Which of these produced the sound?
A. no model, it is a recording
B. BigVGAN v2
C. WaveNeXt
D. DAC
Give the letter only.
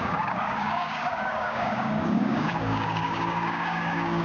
D